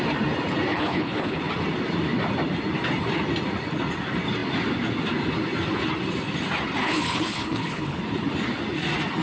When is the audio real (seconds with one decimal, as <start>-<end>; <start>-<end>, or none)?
0.0-0.7; 1.4-6.8; 8.0-9.2

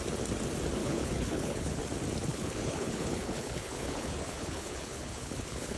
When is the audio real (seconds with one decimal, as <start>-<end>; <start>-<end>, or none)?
0.0-0.8; 1.8-2.3

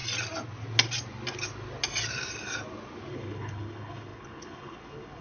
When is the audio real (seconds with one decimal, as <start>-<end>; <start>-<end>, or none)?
0.0-3.1

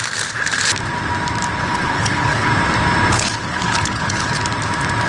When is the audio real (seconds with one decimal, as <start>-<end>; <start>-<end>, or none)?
0.0-1.6; 2.5-3.1; 4.4-5.1

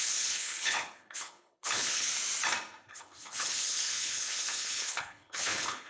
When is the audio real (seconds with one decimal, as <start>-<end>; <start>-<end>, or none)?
2.1-2.9

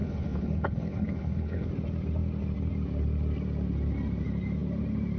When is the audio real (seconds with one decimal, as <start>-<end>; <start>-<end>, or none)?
1.7-5.2

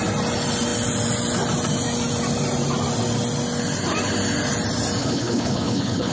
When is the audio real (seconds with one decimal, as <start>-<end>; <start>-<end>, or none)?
0.0-5.0

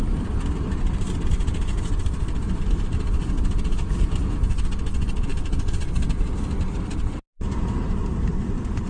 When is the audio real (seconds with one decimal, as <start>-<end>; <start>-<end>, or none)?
0.0-8.9